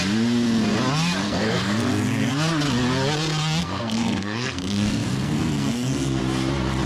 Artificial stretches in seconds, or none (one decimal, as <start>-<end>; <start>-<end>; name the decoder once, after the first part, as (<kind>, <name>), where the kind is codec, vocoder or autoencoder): 1.2-2.3 (codec, SNAC); 3.6-6.2